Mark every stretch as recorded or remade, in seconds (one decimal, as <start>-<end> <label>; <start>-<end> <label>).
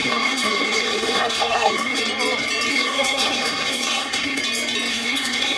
0.0-2.0 remade; 2.0-2.7 recorded; 2.7-4.4 remade; 4.4-4.9 recorded; 4.9-5.6 remade